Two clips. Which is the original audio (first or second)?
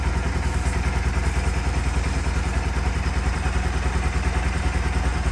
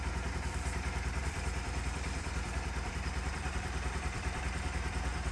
first